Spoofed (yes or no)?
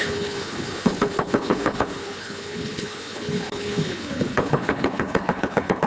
yes